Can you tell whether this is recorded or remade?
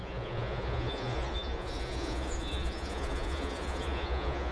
remade